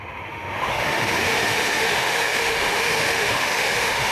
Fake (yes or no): yes